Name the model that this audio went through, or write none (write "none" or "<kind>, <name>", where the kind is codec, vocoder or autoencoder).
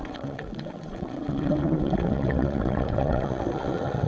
vocoder, WaveNeXt